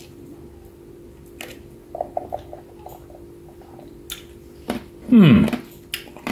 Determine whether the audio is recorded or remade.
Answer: recorded